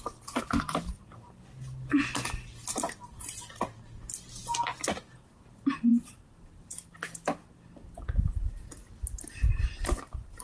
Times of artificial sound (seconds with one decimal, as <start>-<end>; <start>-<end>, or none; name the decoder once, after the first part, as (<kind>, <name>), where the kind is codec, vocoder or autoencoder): 5.9-6.7 (vocoder, BigVGAN v2)